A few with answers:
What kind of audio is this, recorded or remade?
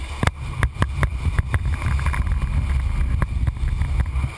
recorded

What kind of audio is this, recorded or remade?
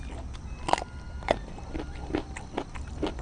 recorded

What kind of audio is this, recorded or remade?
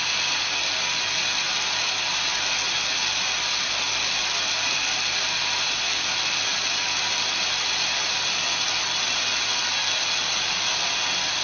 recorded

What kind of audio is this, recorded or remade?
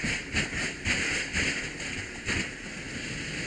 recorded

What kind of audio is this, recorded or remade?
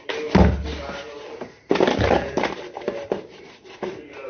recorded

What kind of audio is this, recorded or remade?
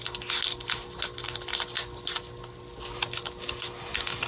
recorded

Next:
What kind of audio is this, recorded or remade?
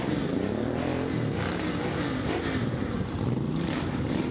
recorded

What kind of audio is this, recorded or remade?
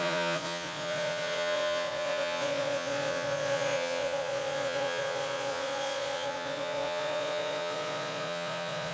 remade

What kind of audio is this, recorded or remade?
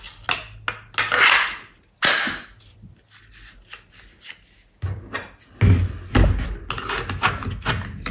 recorded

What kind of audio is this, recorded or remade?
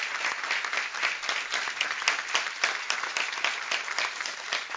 recorded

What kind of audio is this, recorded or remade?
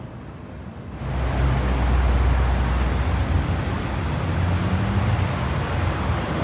recorded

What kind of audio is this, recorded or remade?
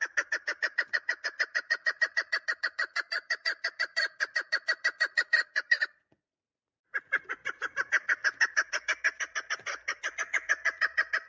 remade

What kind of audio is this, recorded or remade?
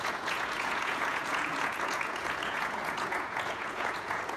remade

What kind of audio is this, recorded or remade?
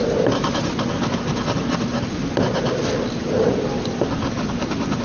recorded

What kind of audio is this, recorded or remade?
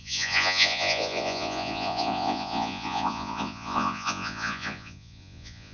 remade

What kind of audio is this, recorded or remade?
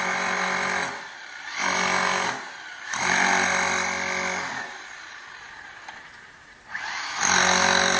recorded